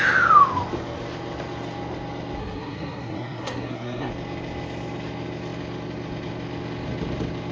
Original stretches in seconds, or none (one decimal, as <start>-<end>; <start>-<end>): 0.0-2.4; 4.1-7.5